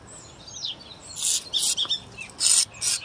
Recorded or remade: recorded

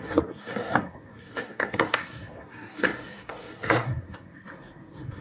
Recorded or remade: remade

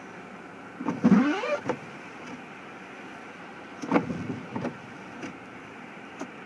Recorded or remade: recorded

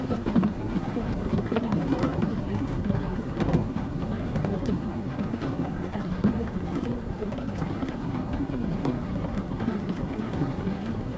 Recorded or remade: remade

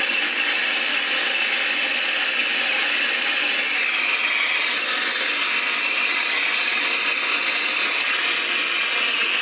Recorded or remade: recorded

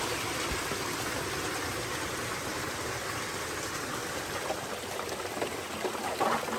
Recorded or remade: recorded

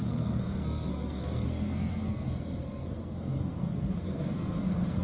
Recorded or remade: remade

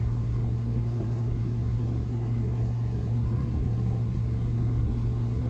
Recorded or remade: remade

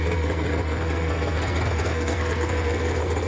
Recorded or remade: remade